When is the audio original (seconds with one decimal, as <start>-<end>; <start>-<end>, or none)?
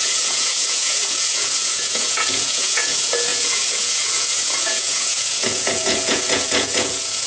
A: none